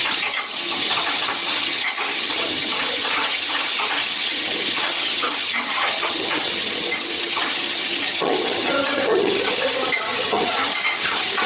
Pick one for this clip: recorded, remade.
remade